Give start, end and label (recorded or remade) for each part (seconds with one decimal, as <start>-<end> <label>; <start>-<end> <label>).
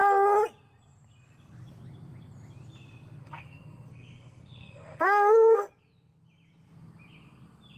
0.0-3.2 recorded; 3.2-5.7 remade; 5.7-7.8 recorded